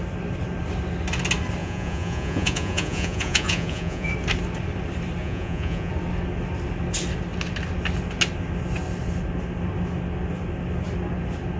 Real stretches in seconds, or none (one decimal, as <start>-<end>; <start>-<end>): 0.0-1.6; 4.1-5.2; 5.9-11.6